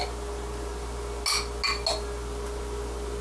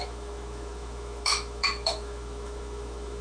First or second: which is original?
first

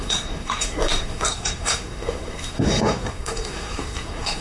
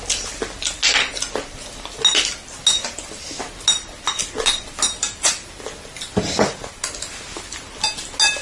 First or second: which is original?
second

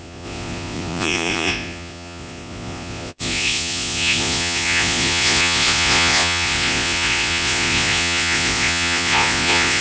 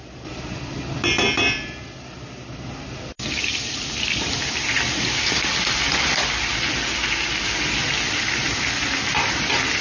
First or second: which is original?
second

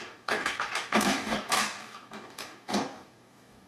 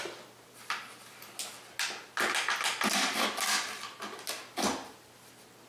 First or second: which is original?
second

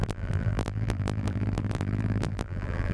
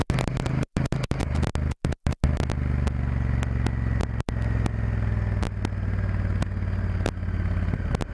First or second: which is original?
second